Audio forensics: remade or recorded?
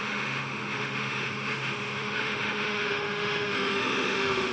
remade